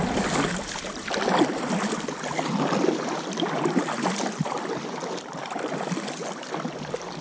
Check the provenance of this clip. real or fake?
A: real